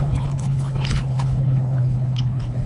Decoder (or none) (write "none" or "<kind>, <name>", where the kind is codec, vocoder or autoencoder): codec, HILCodec